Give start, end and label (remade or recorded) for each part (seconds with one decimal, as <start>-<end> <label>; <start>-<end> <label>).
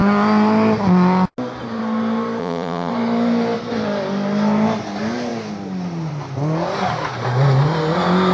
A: 0.0-2.4 recorded; 2.4-2.9 remade; 2.9-8.3 recorded